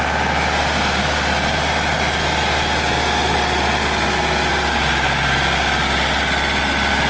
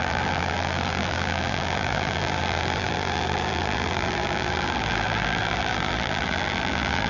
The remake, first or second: second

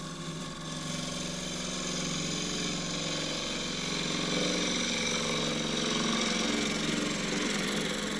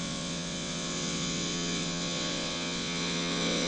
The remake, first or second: second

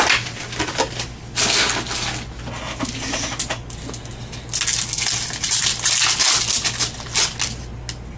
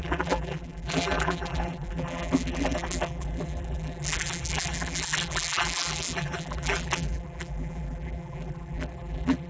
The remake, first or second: second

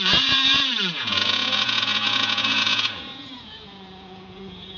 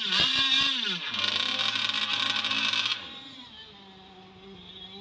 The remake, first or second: first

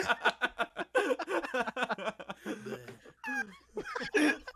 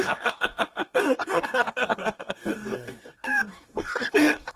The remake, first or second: second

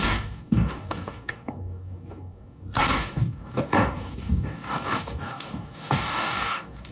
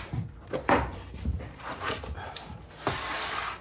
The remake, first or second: first